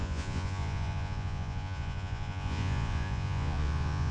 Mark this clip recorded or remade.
remade